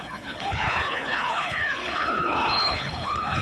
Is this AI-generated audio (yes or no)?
yes